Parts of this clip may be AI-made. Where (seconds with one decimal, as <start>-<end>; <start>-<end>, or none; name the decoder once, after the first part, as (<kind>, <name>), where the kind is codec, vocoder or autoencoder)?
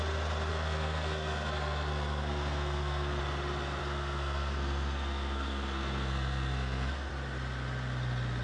0.5-3.2 (codec, SNAC); 3.8-7.1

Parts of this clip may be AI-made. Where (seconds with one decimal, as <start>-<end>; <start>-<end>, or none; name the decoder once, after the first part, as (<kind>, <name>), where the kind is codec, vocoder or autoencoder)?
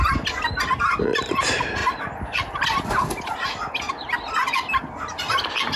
none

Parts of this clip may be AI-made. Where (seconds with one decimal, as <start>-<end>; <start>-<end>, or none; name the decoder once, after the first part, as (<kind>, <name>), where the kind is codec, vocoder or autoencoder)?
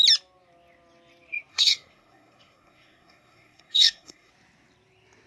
1.5-4.3 (codec, SNAC)